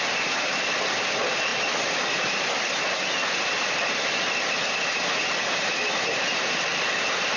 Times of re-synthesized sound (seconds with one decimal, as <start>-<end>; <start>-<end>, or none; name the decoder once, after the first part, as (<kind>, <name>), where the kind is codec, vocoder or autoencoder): none